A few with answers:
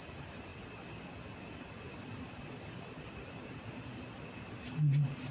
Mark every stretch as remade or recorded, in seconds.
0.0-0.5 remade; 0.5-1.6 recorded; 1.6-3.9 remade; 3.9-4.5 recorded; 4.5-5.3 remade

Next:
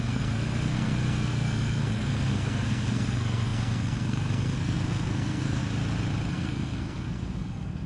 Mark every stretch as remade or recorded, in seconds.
0.0-5.6 remade; 5.6-6.3 recorded; 6.3-7.9 remade

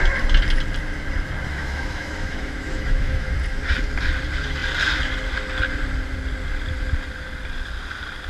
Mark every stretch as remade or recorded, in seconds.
0.0-1.5 recorded; 1.5-3.3 remade; 3.3-8.3 recorded

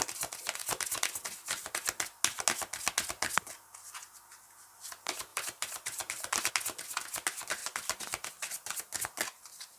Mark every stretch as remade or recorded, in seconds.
0.0-5.3 recorded; 5.3-6.5 remade; 6.5-7.6 recorded; 7.6-8.3 remade; 8.3-9.8 recorded

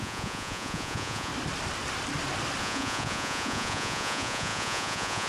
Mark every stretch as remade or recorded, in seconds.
0.0-1.3 remade; 1.3-2.6 recorded; 2.6-5.3 remade